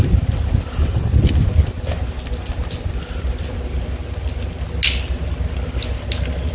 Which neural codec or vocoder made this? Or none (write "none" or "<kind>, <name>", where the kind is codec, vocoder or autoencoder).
none